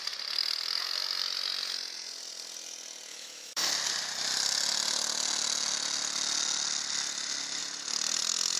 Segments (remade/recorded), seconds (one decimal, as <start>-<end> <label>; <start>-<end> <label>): 0.0-3.1 recorded; 3.1-3.7 remade; 3.7-8.6 recorded